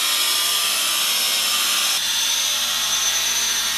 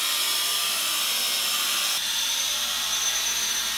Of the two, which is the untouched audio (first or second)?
first